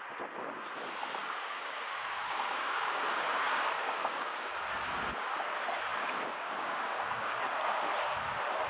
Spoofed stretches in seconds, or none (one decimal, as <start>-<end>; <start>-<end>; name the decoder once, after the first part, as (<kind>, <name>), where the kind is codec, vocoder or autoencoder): 1.2-4.5 (codec, DAC); 5.9-7.4